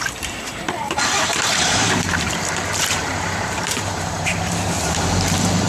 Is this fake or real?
fake